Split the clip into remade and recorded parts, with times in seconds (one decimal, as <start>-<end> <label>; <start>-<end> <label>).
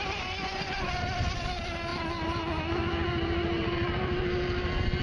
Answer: 0.0-0.4 recorded; 0.4-0.9 remade; 0.9-5.0 recorded